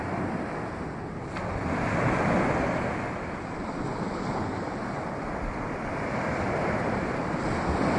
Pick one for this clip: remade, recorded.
recorded